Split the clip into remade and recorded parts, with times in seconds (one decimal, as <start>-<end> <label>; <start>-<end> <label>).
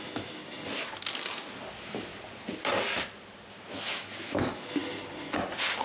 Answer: 0.0-0.4 remade; 0.4-1.7 recorded; 1.7-2.1 remade; 2.1-3.5 recorded; 3.5-4.8 remade; 4.8-5.8 recorded